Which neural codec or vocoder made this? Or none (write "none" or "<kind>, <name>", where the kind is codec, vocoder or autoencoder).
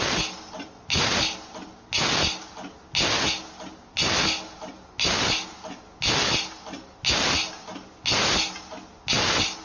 none